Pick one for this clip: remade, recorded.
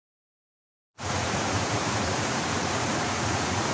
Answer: remade